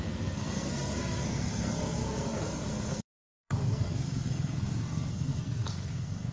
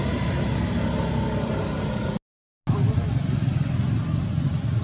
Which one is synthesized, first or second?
first